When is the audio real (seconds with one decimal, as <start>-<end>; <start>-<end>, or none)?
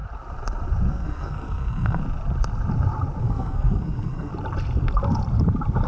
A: 0.0-0.9; 2.0-3.2; 4.3-5.9